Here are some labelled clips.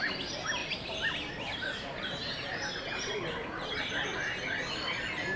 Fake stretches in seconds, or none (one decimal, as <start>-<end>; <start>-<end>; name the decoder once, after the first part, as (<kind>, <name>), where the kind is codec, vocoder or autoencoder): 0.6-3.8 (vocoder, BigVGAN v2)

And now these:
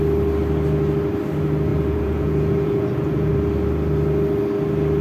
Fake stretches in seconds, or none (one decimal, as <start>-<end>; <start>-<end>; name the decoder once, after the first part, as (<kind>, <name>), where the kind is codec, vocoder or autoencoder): 1.7-3.3 (vocoder, Vocos)

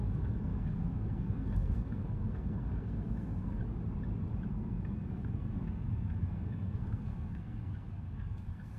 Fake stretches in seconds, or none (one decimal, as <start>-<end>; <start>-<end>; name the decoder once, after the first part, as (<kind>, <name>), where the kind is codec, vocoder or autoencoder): 0.0-3.6 (codec, SNAC); 4.5-8.8

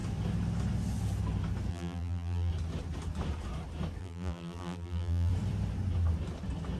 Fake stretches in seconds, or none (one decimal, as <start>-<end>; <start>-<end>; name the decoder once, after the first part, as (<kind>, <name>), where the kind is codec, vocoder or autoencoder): 1.7-2.5 (vocoder, BigVGAN v2); 4.0-5.3

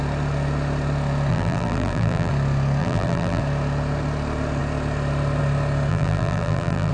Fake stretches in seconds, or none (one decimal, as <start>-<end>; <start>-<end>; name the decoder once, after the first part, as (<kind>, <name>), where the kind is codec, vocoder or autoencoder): 1.3-2.3 (vocoder, BigVGAN v2); 2.8-3.4; 5.9-6.9

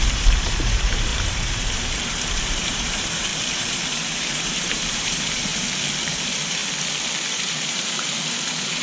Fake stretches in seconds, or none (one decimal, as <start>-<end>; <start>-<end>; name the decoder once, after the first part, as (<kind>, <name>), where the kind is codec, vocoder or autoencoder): 0.0-5.5 (vocoder, BigVGAN v2); 6.1-6.6; 7.3-8.8

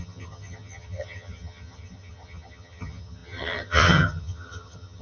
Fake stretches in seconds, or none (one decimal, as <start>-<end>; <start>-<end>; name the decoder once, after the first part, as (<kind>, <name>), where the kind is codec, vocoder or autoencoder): 0.0-5.0 (vocoder, HiFi-GAN)